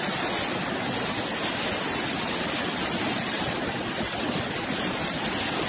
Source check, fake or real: real